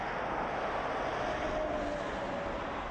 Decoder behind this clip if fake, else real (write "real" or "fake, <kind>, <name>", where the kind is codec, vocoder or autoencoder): real